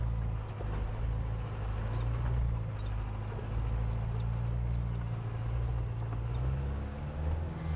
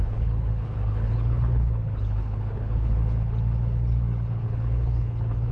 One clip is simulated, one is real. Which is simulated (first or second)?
second